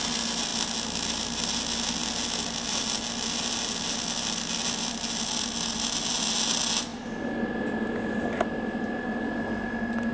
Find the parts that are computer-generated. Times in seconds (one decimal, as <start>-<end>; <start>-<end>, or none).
none